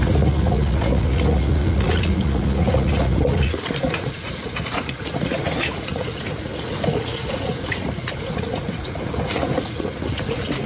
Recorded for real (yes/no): no